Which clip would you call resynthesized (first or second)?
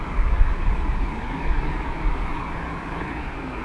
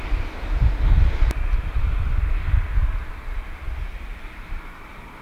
first